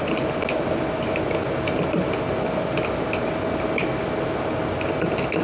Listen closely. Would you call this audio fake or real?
real